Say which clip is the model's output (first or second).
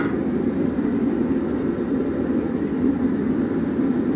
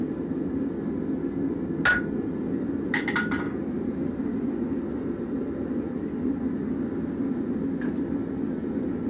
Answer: first